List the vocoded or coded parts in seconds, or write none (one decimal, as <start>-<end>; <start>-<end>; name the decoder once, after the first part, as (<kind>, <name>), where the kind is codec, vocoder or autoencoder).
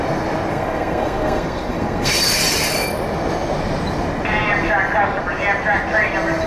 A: 0.5-2.2 (codec, SNAC)